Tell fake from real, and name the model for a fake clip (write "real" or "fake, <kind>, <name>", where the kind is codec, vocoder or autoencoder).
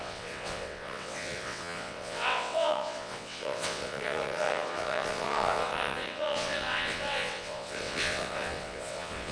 fake, vocoder, WaveNeXt